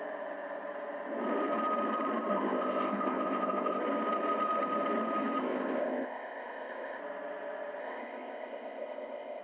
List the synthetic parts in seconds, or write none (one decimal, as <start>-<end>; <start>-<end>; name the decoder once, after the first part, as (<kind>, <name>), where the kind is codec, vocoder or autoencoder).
2.3-3.8 (codec, ZipCodec); 5.4-7.0; 7.8-9.4

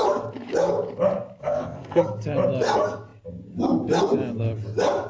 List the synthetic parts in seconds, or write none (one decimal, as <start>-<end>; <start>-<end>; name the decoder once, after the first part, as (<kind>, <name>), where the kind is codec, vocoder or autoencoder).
1.4-2.0 (codec, ZipCodec)